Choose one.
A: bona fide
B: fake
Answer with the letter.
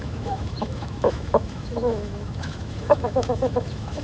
B